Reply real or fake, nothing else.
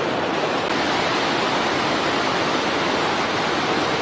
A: real